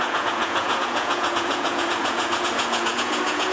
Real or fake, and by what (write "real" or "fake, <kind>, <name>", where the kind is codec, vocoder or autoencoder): fake, vocoder, Vocos